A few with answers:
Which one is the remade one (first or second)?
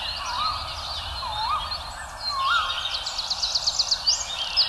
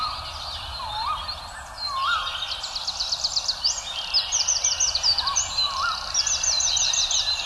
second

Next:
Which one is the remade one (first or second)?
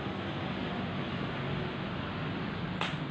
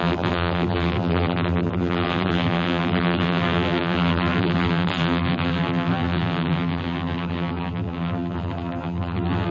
second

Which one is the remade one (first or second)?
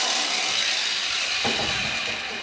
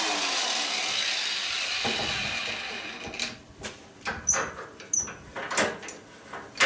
first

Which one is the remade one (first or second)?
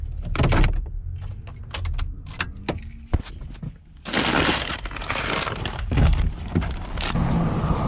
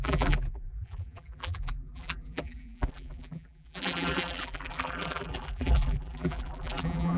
second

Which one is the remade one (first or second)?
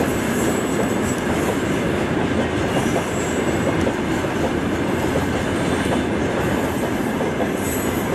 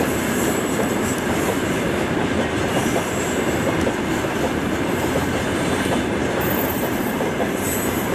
second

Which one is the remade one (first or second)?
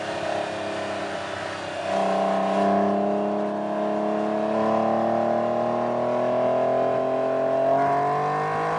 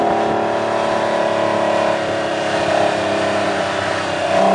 second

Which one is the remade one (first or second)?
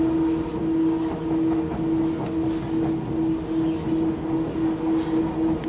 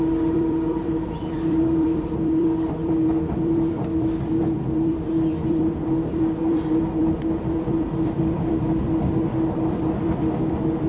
second